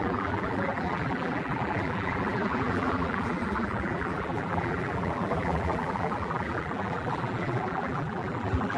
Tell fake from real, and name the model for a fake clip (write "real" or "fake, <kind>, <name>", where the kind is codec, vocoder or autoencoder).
fake, vocoder, BigVGAN v2